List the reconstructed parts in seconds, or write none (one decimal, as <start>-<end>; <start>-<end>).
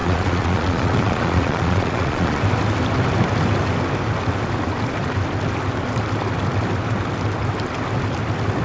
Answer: 0.0-2.4